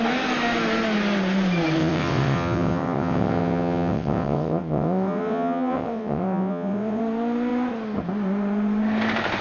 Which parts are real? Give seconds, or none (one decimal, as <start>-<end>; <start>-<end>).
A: 0.0-1.8; 7.0-9.4